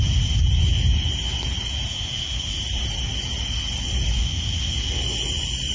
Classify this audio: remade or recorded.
recorded